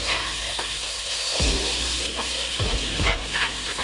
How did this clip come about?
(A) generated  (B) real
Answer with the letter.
A